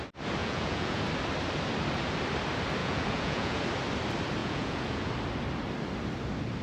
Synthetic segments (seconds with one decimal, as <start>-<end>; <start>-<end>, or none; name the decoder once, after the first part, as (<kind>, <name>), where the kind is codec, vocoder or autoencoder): 0.4-1.0 (vocoder, Vocos); 2.8-3.6; 4.4-5.1